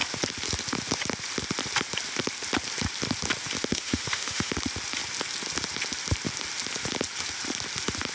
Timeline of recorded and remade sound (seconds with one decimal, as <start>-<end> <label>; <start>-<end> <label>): 0.0-3.7 recorded; 3.7-4.5 remade; 4.5-8.1 recorded